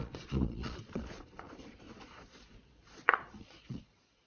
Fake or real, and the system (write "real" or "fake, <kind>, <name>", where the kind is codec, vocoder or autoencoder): fake, vocoder, Vocos